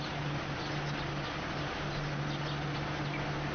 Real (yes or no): yes